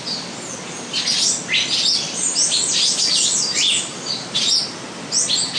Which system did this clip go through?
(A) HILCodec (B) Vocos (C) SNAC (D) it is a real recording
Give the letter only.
D